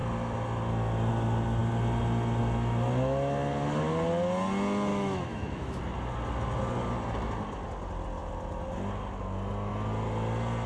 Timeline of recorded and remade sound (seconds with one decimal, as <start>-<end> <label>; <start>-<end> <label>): 0.0-4.9 recorded; 4.9-5.8 remade; 5.8-10.7 recorded